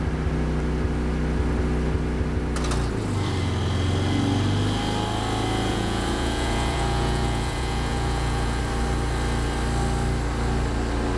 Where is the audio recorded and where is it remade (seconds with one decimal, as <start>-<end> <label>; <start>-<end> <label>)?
0.0-5.7 recorded; 5.7-8.6 remade; 8.6-11.2 recorded